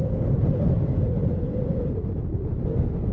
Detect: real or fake real